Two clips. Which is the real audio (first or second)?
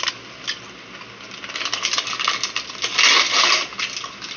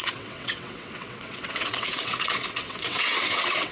first